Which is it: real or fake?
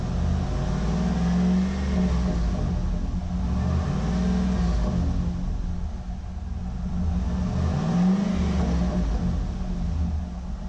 real